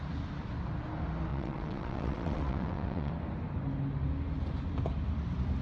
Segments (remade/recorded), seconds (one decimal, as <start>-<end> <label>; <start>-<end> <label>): 0.0-1.3 recorded; 1.3-3.1 remade; 3.1-5.6 recorded